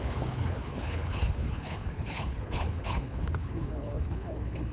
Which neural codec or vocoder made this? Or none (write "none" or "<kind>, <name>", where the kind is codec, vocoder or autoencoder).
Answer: codec, HILCodec